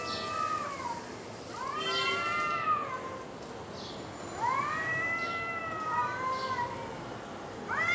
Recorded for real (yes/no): yes